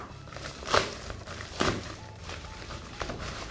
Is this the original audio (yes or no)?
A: no